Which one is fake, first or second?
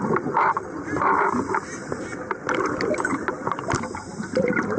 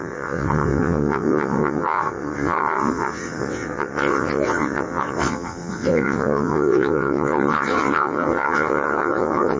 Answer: second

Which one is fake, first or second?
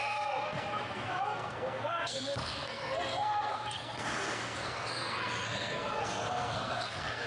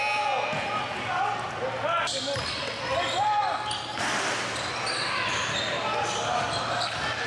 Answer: first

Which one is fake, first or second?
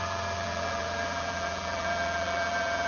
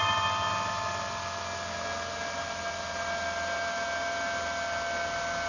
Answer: first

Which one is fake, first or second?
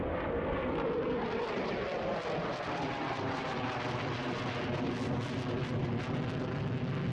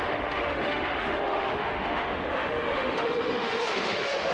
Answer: second